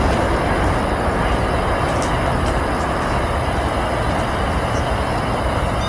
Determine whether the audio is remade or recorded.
recorded